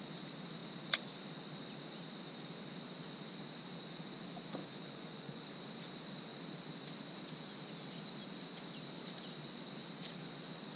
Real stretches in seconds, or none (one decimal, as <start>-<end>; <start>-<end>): 0.0-4.6; 5.4-10.2